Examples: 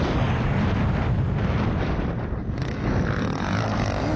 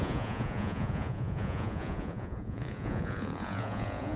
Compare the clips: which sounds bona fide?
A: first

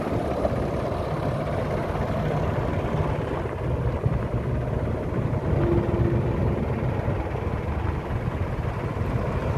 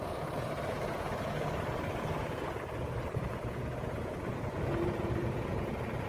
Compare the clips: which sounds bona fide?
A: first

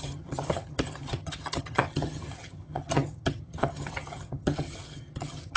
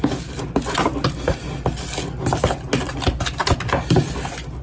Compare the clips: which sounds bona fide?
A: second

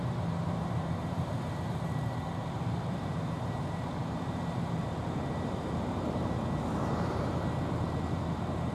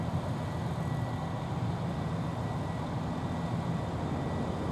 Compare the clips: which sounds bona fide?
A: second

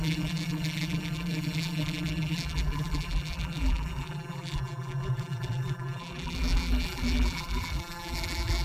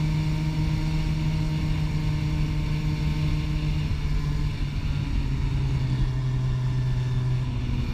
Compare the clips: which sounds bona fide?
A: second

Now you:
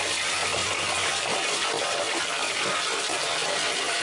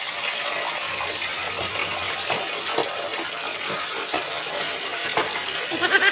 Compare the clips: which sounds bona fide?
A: second